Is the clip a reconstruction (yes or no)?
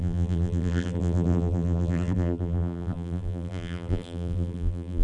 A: yes